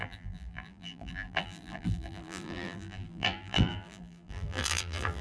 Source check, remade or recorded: remade